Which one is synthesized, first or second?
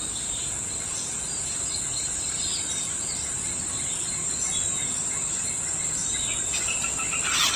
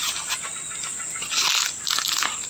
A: first